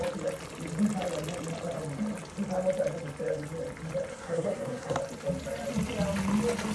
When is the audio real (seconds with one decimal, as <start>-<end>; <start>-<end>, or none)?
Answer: 0.0-4.1; 5.0-6.7